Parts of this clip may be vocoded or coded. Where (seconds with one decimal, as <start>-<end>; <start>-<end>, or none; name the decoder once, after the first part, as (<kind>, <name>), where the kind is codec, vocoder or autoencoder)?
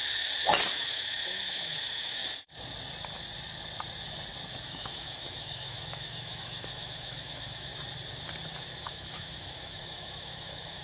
0.7-2.2 (autoencoder, DAC-VAE); 4.6-7.7; 8.8-10.8